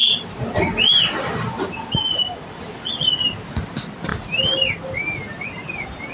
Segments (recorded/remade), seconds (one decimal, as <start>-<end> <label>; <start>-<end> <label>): 0.0-6.1 recorded